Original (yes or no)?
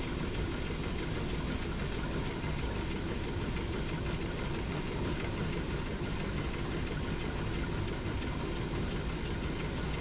yes